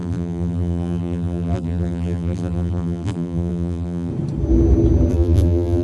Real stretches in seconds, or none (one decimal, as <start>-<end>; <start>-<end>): 4.1-5.1